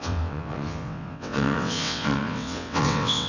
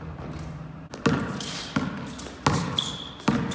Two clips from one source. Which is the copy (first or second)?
first